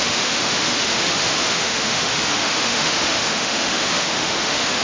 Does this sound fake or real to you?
fake